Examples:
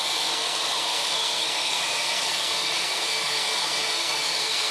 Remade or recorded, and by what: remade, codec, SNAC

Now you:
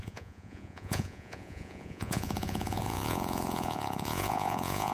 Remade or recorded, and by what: remade, vocoder, Vocos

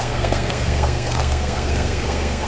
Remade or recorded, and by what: remade, codec, SNAC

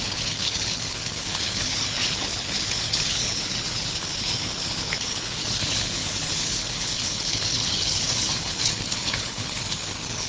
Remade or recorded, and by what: remade, codec, HILCodec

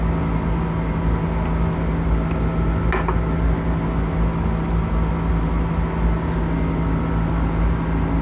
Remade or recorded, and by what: recorded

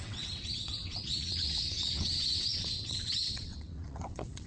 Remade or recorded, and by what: remade, vocoder, WaveNeXt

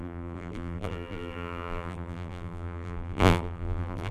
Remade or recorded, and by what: remade, vocoder, BigVGAN v2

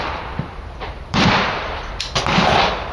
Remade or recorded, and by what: remade, vocoder, BigVGAN v2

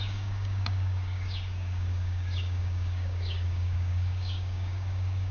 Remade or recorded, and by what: remade, codec, DAC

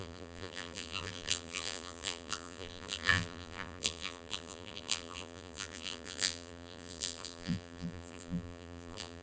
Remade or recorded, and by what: remade, vocoder, BigVGAN v2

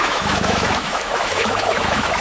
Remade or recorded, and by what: remade, autoencoder, DAC-VAE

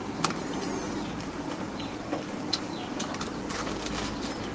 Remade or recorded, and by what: recorded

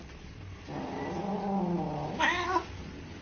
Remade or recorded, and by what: recorded